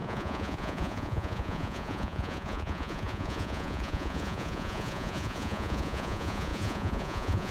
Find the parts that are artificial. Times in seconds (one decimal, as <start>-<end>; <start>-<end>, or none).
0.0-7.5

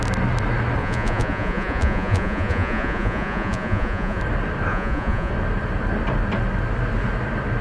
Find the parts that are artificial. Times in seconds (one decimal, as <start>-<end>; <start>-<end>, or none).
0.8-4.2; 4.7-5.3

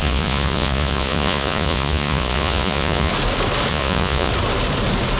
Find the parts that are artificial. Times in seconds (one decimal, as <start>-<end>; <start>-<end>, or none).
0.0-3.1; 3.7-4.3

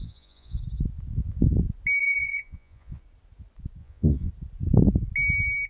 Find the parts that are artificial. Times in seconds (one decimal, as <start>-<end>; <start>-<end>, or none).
0.0-0.6; 2.0-3.0; 3.8-4.3

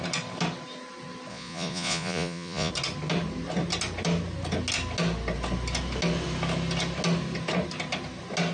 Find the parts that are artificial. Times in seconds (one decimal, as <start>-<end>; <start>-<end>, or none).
1.3-2.7

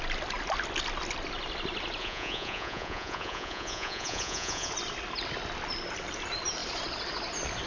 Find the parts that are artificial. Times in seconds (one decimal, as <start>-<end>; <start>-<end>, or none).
2.0-4.7

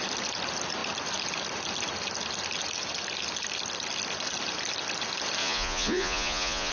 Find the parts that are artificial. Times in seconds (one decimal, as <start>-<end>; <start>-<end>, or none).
5.4-6.7